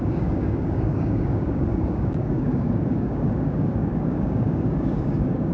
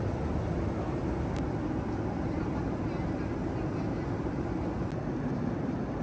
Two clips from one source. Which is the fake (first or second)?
first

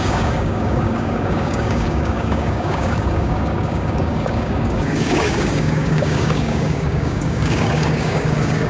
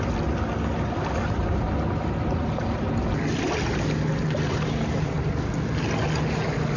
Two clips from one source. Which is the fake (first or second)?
first